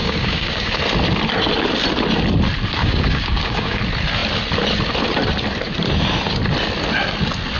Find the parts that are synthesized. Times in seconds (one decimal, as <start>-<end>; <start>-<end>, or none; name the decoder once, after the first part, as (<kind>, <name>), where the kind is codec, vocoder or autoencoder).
0.0-0.8 (codec, DAC); 2.8-3.8